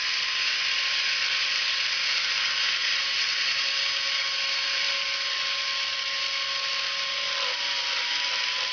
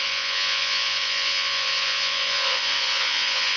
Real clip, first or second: first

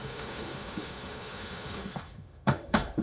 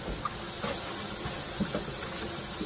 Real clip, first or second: second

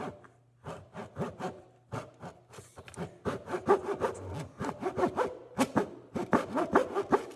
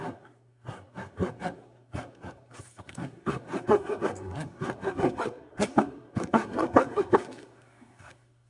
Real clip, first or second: first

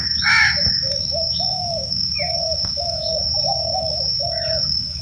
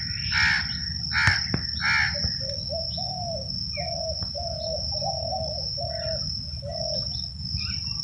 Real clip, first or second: second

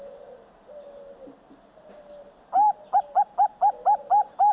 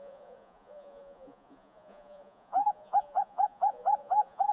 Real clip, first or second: first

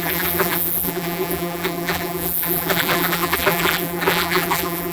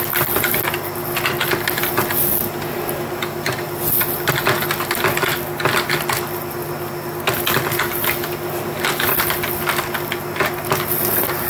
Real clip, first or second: second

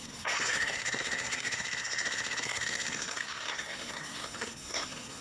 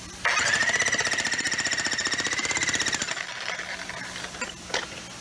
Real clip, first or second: second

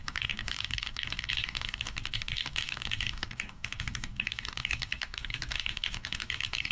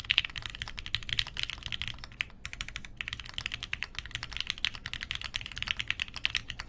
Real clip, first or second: second